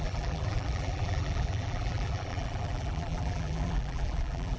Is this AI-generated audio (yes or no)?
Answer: yes